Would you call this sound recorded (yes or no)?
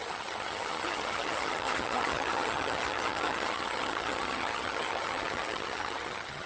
no